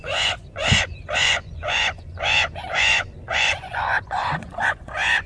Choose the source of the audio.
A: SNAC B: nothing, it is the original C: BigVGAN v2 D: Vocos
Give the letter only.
D